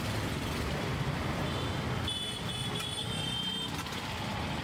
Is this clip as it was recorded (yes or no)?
yes